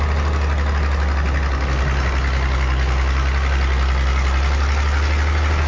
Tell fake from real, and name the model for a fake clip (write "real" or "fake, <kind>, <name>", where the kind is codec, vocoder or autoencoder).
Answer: real